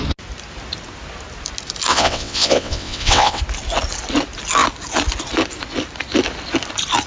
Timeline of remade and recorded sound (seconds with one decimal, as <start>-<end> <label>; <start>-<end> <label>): 0.0-1.9 recorded; 1.9-3.4 remade; 3.4-7.1 recorded